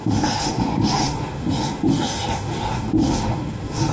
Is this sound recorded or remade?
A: remade